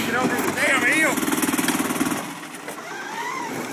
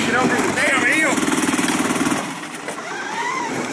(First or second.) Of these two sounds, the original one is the first